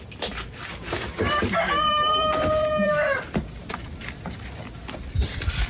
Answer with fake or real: fake